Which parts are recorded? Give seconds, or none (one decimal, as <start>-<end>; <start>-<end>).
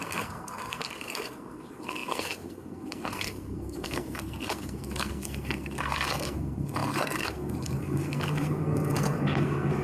none